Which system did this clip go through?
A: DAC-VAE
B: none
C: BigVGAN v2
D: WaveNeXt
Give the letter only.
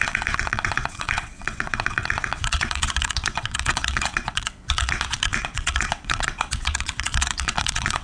D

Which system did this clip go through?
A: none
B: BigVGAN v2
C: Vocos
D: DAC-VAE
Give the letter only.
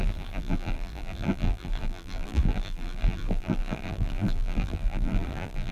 B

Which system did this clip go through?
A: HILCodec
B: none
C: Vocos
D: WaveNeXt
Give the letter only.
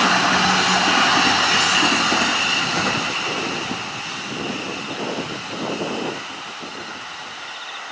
B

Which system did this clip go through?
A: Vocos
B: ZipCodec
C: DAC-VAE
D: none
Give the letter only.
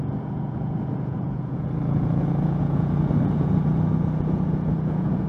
A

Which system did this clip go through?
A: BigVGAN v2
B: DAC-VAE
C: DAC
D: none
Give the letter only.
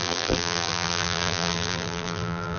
A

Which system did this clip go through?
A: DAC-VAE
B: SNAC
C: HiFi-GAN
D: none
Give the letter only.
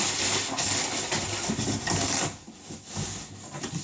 D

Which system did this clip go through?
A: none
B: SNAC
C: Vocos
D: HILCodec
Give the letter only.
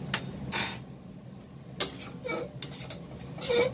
A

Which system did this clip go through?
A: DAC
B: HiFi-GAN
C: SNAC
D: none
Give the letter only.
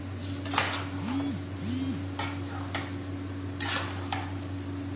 D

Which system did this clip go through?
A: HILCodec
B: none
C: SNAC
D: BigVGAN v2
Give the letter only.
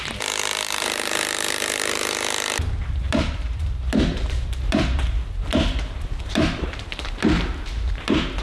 D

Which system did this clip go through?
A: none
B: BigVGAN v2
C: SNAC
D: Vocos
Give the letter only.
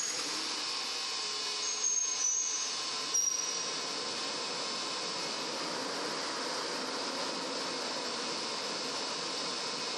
A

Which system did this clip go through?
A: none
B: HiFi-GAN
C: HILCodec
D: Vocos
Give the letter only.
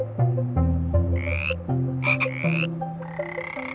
A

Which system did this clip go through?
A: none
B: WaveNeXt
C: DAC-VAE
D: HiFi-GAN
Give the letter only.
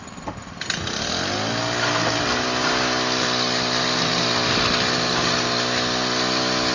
A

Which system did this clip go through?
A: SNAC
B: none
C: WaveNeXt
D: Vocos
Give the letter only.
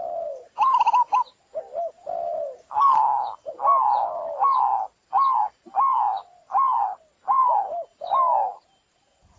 B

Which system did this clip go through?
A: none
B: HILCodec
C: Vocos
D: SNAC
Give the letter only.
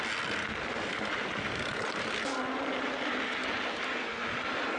A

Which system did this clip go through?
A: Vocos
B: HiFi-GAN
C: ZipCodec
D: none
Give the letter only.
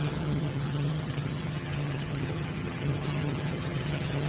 B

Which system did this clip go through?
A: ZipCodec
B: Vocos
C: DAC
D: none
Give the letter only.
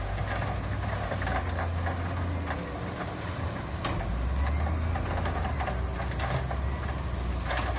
D